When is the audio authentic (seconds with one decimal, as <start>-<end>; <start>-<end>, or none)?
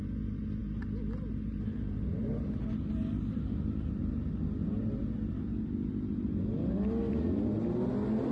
0.0-8.3